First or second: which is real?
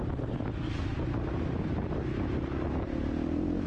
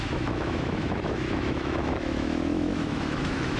first